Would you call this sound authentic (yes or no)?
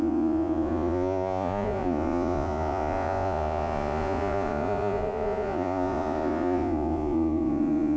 no